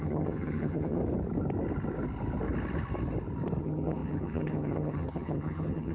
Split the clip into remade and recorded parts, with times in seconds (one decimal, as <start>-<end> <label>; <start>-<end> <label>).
0.0-1.0 remade; 1.0-3.6 recorded; 3.6-5.9 remade